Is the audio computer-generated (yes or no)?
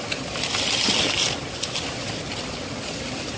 no